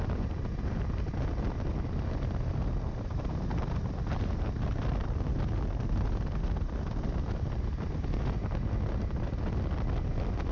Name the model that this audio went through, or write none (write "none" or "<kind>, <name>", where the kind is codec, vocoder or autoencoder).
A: none